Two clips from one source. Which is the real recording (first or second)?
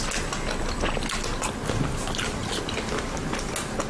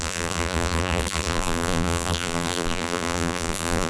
first